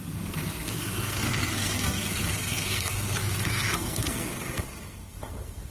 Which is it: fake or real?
fake